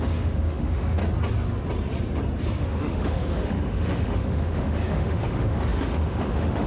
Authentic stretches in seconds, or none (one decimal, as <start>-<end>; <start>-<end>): 1.0-2.6